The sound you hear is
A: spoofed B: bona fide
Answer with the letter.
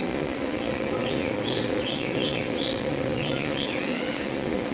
A